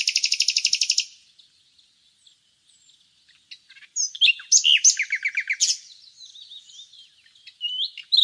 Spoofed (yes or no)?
no